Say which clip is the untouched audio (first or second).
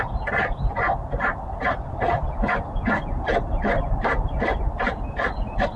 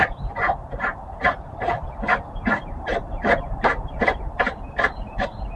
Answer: first